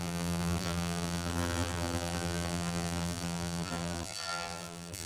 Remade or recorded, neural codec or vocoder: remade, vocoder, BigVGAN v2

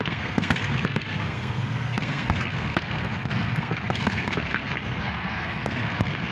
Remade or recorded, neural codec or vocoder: remade, codec, SNAC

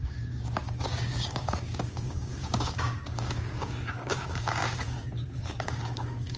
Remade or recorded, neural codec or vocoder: remade, codec, DAC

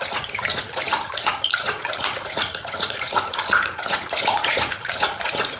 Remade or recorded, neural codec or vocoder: remade, vocoder, Vocos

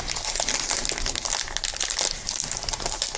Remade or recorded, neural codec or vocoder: recorded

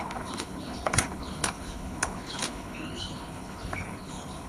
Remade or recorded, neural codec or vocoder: remade, codec, HILCodec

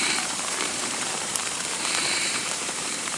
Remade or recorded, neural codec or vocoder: remade, vocoder, BigVGAN v2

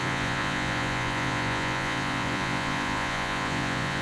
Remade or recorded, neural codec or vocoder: remade, vocoder, Vocos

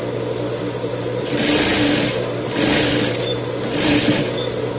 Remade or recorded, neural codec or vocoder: recorded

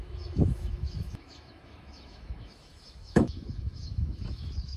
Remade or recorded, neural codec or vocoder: remade, autoencoder, DAC-VAE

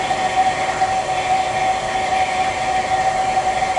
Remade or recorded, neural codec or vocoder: recorded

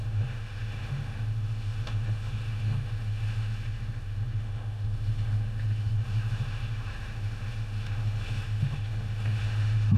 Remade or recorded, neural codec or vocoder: remade, autoencoder, DAC-VAE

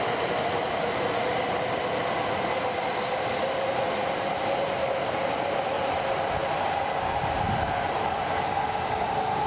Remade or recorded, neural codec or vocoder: recorded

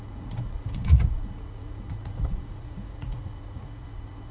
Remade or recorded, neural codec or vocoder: remade, vocoder, Vocos